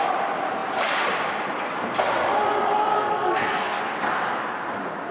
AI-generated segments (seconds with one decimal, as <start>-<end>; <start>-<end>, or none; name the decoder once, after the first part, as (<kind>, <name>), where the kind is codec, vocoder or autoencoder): 2.9-3.8 (codec, SNAC)